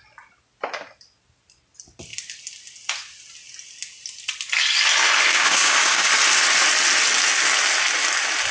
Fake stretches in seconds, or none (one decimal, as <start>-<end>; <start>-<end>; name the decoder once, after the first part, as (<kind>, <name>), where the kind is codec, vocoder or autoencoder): 5.3-6.1 (codec, DAC)